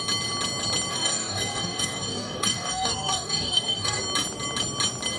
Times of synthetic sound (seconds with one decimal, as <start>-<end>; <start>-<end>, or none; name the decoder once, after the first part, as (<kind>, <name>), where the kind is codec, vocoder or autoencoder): 0.9-4.0 (codec, DAC)